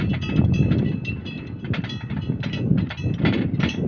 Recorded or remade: recorded